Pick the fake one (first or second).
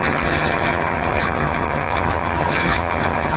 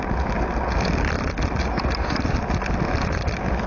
first